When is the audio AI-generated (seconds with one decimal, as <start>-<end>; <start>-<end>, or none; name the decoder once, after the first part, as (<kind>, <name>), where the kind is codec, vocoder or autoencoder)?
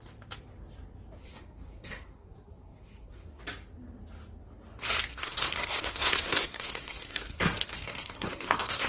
1.2-3.4 (codec, SNAC); 5.1-8.9